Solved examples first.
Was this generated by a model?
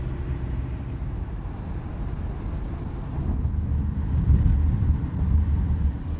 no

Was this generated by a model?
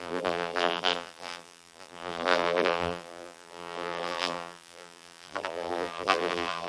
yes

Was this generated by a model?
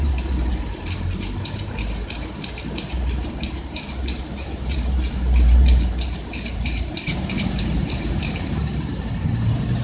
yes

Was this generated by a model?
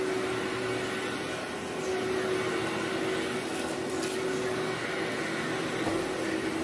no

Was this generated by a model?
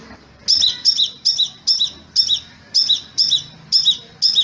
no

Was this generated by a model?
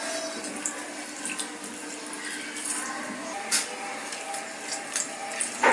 no